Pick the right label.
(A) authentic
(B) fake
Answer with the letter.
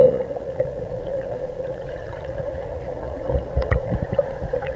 B